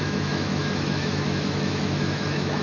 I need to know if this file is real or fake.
fake